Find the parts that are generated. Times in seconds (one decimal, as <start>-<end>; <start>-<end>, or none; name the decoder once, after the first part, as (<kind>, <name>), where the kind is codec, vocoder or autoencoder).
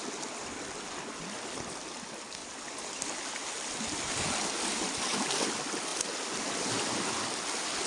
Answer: none